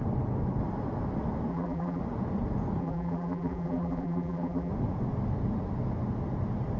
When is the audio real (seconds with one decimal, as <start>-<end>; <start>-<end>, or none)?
0.0-1.5; 2.0-2.8; 4.7-6.8